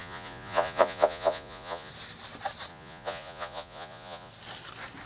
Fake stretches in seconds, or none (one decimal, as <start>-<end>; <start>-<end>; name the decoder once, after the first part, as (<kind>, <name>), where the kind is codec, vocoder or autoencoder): 0.0-1.9 (vocoder, Vocos); 2.7-4.3